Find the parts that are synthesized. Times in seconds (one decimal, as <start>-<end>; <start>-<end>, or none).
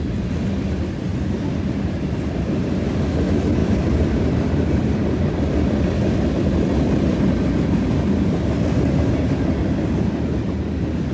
3.6-5.3